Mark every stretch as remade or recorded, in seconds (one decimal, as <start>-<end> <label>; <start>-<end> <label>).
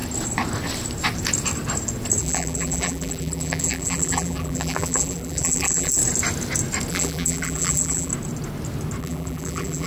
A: 0.0-2.2 recorded; 2.2-6.0 remade; 6.0-6.9 recorded; 6.9-8.1 remade; 8.1-9.0 recorded; 9.0-9.9 remade